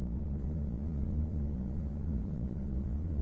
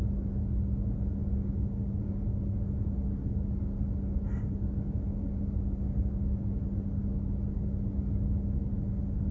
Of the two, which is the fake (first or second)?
first